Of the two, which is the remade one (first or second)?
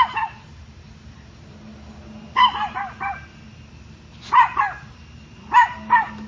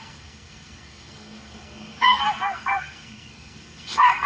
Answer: second